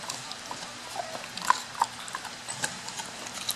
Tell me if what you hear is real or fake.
real